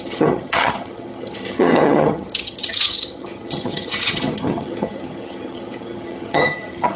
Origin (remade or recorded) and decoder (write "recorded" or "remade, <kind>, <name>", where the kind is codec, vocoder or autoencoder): remade, vocoder, HiFi-GAN